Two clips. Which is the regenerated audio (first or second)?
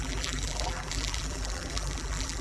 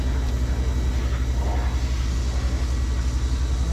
first